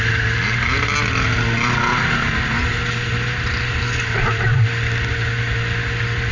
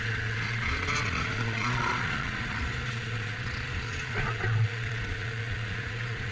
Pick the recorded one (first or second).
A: first